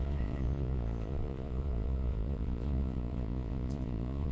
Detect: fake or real fake